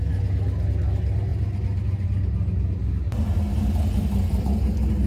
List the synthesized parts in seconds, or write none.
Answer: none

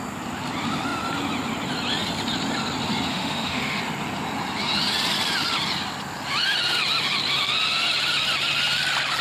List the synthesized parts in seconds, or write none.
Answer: 3.1-3.8

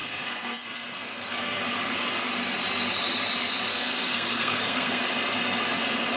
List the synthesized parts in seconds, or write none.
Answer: 0.0-1.6; 3.7-5.0

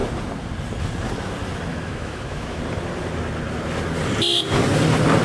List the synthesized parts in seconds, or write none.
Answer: 1.7-2.6